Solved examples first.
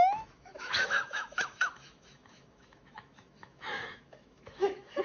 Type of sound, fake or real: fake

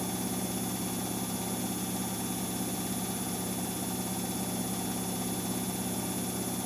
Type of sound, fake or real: real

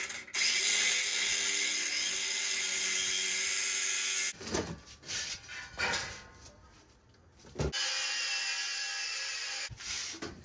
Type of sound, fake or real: real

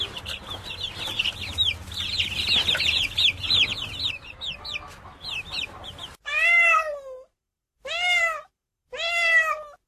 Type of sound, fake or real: real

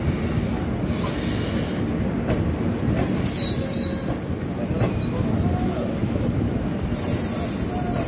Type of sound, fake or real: real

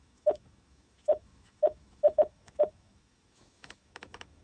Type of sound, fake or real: fake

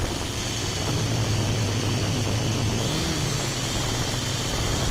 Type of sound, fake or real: real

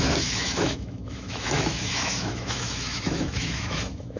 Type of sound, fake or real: fake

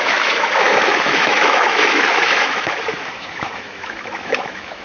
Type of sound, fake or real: fake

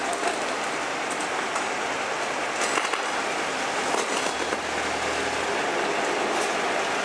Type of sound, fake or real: real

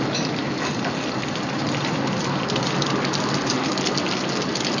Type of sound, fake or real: real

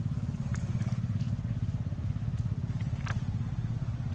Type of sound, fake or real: real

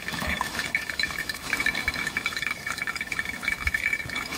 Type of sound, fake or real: fake